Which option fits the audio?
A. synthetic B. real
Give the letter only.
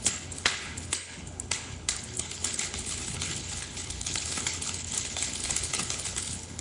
A